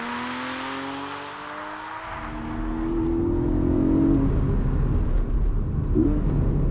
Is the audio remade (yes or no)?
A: no